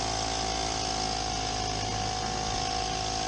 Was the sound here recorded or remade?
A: recorded